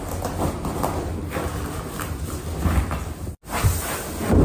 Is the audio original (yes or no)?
yes